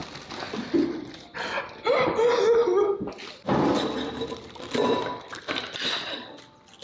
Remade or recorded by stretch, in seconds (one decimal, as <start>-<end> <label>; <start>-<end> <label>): 0.0-6.8 recorded